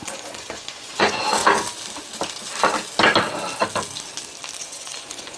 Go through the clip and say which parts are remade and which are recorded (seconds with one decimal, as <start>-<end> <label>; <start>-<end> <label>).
0.0-1.4 remade; 1.4-4.6 recorded; 4.6-5.4 remade